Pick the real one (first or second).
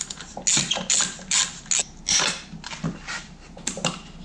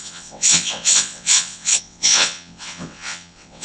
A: first